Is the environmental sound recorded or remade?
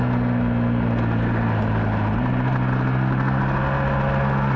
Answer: recorded